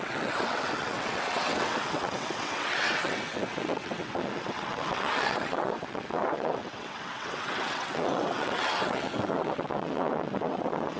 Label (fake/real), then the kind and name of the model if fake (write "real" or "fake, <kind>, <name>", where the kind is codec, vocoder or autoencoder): fake, vocoder, WaveNeXt